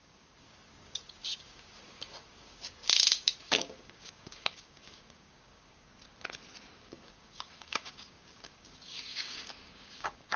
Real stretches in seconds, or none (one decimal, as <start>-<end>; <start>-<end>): 5.9-6.8